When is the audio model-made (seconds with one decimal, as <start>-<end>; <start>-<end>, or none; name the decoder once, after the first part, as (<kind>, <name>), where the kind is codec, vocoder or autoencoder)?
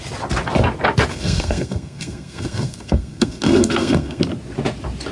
1.1-4.2 (codec, SNAC)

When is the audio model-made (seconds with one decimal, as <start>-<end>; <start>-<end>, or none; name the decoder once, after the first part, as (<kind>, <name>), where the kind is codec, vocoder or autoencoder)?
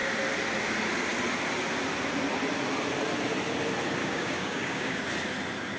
4.0-5.0 (codec, DAC)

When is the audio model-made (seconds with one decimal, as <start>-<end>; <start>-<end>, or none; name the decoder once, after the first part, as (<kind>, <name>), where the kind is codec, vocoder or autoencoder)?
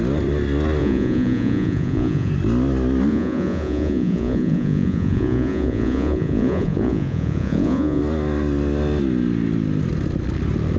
0.8-2.3 (vocoder, Vocos); 3.1-8.0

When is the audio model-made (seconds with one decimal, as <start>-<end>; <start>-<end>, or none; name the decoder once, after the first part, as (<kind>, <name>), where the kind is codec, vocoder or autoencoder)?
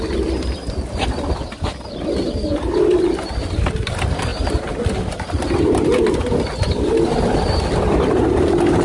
none